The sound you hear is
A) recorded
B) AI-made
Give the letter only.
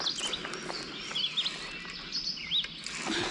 A